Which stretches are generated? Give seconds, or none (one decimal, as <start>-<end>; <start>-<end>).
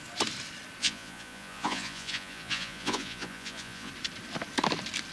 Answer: 0.8-3.9